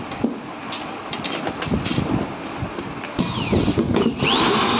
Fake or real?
real